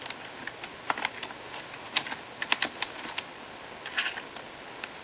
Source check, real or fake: real